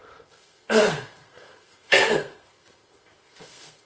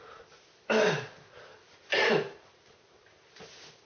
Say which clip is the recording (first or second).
second